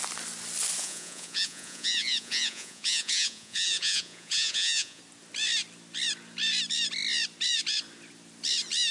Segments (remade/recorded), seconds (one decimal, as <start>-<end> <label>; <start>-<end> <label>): 0.0-0.8 recorded; 0.8-5.0 remade; 5.0-8.9 recorded